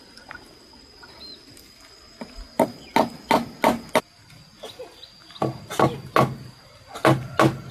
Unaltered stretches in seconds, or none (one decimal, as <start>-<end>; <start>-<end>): 0.0-7.7